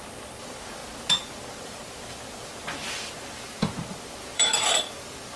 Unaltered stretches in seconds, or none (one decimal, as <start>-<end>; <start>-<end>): 0.8-3.4